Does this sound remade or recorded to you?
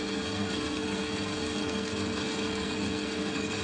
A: remade